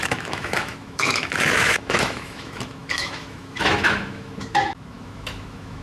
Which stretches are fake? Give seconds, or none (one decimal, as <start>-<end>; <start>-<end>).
0.0-5.8

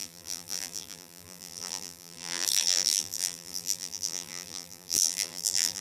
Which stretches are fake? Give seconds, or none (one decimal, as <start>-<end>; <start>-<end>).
0.0-5.8

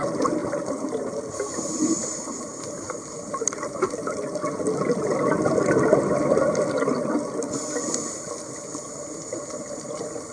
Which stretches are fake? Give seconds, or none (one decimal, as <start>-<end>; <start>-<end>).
0.4-3.3